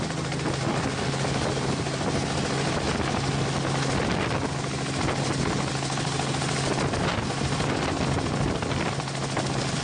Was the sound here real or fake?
real